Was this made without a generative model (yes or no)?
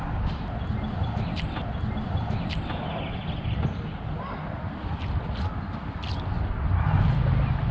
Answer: yes